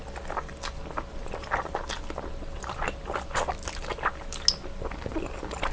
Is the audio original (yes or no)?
yes